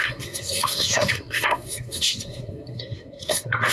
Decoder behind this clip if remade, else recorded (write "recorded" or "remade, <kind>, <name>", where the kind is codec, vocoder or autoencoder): remade, codec, SNAC